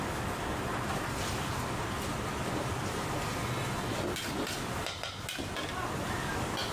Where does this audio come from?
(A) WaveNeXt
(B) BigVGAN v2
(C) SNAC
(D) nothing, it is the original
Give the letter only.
D